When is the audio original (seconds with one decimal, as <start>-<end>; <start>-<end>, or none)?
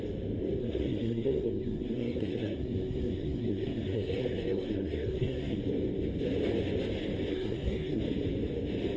0.0-0.6; 5.6-7.3; 8.0-9.0